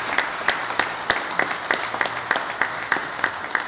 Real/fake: real